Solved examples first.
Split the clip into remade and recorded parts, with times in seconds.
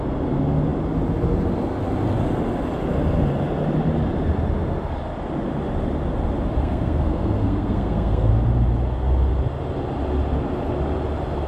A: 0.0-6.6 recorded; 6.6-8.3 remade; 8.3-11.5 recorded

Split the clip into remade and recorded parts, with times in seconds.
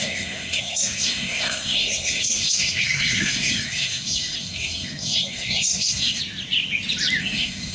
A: 0.0-6.2 remade; 6.2-7.2 recorded; 7.2-7.7 remade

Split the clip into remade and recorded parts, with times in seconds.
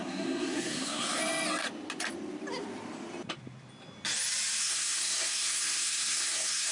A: 0.0-1.2 remade; 1.2-4.6 recorded; 4.6-6.7 remade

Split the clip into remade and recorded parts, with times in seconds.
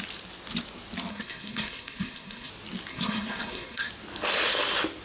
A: 0.0-1.1 recorded; 1.1-2.5 remade; 2.5-2.9 recorded; 2.9-3.9 remade; 3.9-5.0 recorded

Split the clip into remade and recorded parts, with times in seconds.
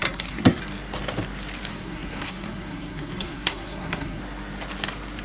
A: 0.0-0.6 remade; 0.6-1.7 recorded; 1.7-4.2 remade; 4.2-5.2 recorded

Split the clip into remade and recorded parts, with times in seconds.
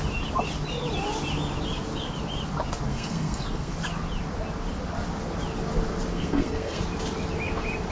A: 0.0-2.9 recorded; 2.9-3.7 remade; 3.7-6.1 recorded; 6.1-6.8 remade; 6.8-7.9 recorded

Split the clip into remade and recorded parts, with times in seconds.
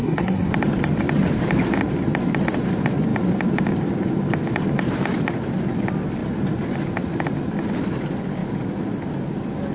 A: 0.0-0.5 remade; 0.5-9.7 recorded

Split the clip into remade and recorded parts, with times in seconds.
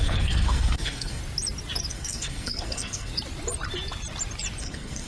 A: 0.0-1.2 remade; 1.2-1.9 recorded; 1.9-3.1 remade; 3.1-4.6 recorded; 4.6-5.1 remade